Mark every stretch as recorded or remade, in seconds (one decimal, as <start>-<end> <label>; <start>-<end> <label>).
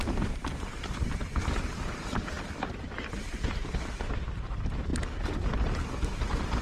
0.0-4.9 remade; 4.9-6.6 recorded